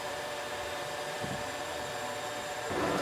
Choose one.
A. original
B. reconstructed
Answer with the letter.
B